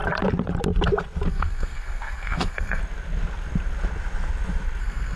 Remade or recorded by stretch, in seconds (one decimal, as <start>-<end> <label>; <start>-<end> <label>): 0.0-1.3 recorded; 1.3-2.8 remade; 2.8-4.8 recorded; 4.8-5.2 remade